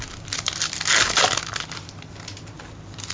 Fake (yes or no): no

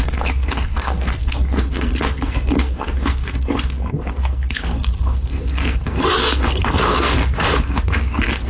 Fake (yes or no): yes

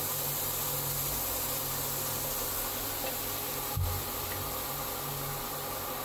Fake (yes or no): no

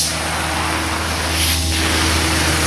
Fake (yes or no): no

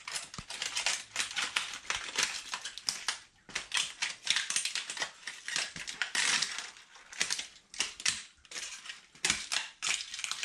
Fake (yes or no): no